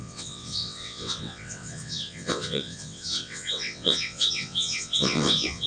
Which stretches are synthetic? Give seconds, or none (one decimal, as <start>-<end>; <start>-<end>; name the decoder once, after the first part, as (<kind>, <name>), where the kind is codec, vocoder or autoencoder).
0.0-5.7 (vocoder, WaveNeXt)